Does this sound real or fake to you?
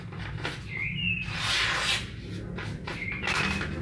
real